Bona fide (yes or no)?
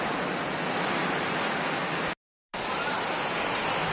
yes